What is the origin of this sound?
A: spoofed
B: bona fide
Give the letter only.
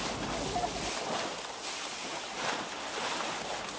B